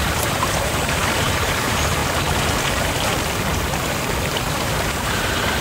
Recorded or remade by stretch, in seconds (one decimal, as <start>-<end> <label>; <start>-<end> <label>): 0.0-2.0 remade; 2.0-4.2 recorded; 4.2-5.6 remade